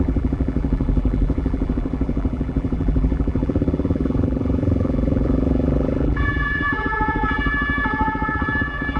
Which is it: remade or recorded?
remade